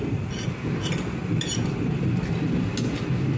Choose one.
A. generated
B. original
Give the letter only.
B